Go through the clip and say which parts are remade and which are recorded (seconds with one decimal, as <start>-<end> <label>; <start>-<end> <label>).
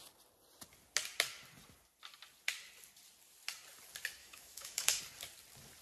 0.0-4.2 recorded; 4.2-5.0 remade; 5.0-5.8 recorded